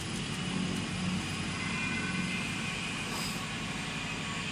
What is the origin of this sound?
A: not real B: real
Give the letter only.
B